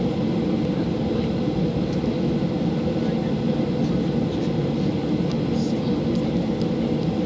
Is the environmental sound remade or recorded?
recorded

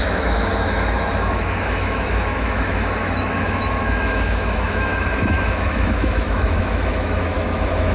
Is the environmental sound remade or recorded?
remade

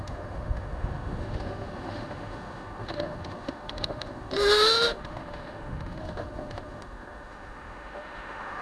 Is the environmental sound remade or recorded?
remade